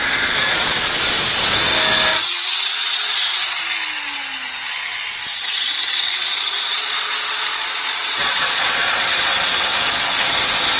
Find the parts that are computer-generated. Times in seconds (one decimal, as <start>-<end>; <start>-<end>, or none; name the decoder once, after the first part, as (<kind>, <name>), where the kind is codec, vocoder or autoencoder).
0.0-1.4 (vocoder, Vocos); 2.1-3.6; 5.3-10.0